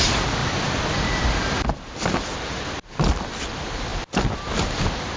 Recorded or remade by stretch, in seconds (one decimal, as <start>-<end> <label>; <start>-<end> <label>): 0.0-2.3 remade; 2.3-2.9 recorded; 2.9-5.2 remade